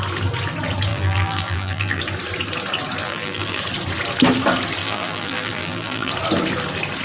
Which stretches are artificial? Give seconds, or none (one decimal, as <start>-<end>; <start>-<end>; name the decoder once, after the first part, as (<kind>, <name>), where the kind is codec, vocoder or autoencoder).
0.9-2.0 (vocoder, BigVGAN v2); 3.0-3.6; 4.8-6.1